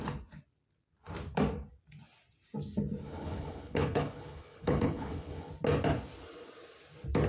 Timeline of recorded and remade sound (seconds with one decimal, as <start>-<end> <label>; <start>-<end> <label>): 0.0-3.0 recorded; 3.0-5.5 remade; 5.5-7.3 recorded